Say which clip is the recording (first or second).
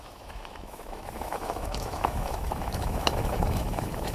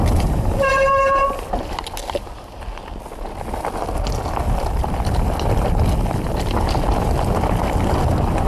second